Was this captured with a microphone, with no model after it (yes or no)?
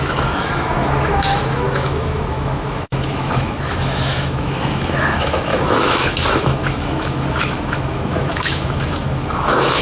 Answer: no